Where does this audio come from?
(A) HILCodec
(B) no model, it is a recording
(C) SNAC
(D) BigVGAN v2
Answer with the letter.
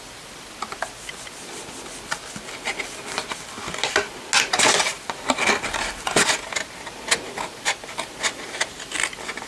B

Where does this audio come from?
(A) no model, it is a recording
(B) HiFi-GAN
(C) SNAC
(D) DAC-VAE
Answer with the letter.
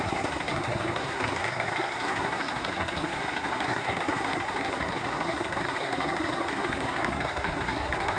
C